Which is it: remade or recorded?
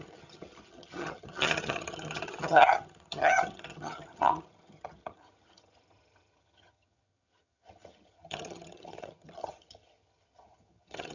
remade